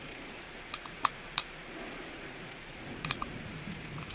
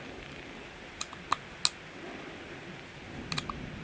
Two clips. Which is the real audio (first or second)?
second